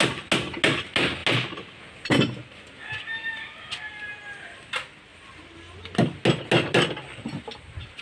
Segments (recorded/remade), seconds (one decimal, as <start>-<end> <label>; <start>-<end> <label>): 0.0-8.0 recorded